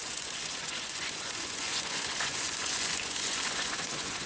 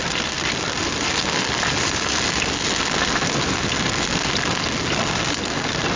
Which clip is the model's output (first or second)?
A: first